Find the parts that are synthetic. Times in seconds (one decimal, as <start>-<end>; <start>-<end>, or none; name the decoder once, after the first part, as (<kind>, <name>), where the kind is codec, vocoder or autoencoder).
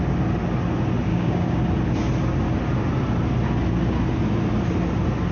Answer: 1.1-1.6 (codec, DAC)